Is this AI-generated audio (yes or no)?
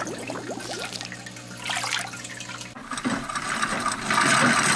no